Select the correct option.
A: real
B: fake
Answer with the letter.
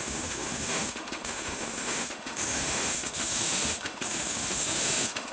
B